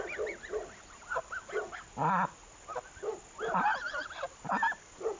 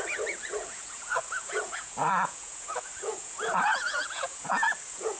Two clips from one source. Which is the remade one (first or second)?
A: second